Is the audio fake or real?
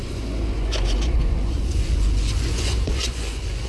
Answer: fake